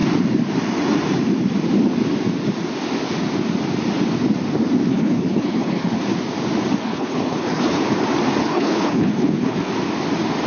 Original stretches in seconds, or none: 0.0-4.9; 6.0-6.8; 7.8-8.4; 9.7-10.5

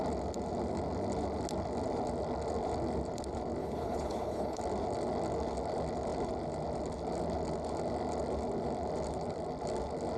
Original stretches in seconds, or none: 0.0-3.6; 4.6-10.2

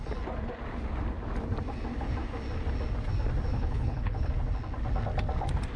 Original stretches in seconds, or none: 0.0-3.5; 4.3-5.8

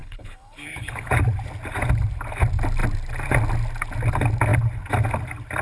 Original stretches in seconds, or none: 1.1-5.6